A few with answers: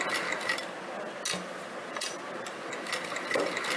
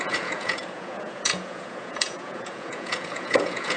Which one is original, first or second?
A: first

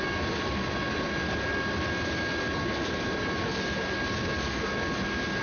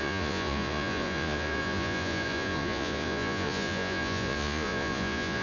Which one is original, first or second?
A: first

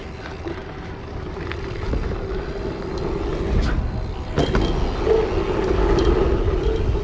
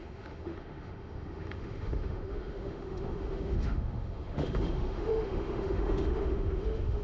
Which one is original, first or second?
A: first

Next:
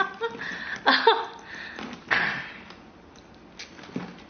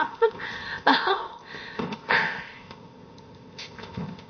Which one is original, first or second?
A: first